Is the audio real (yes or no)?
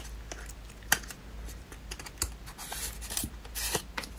yes